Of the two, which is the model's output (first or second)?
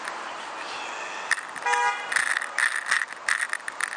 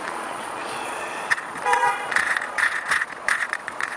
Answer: second